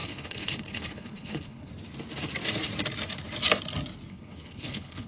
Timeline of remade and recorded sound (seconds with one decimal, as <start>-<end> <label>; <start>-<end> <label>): 0.0-1.7 remade; 1.7-4.1 recorded; 4.1-5.1 remade